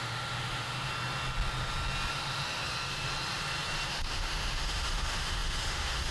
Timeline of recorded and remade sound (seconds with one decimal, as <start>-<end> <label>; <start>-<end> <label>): 0.0-0.9 remade; 0.9-2.1 recorded; 2.1-2.6 remade; 2.6-3.9 recorded; 3.9-6.1 remade